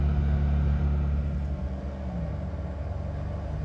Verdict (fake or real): real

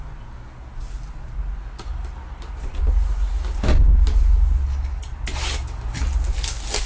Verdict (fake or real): real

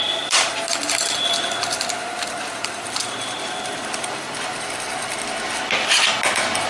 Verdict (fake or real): real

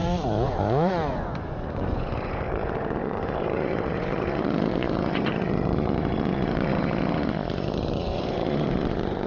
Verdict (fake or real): fake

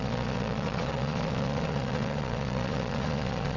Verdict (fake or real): fake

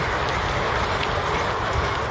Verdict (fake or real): real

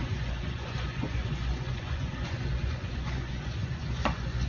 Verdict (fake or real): fake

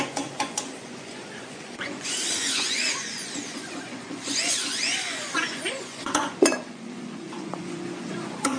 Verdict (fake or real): fake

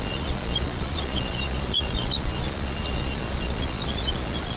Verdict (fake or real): fake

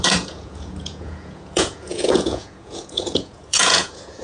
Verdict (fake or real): fake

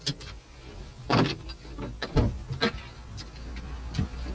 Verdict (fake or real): real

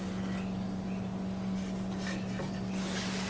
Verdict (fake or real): real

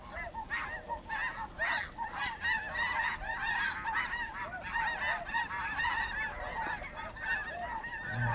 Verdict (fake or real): real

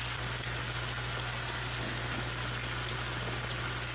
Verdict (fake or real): real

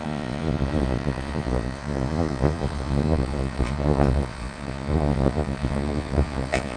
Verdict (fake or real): fake